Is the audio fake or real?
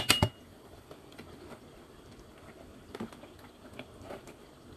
real